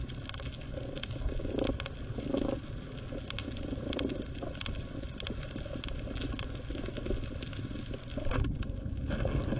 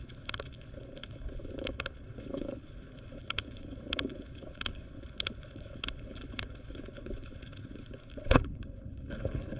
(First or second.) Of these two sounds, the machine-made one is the second